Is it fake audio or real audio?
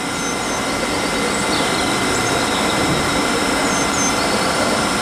real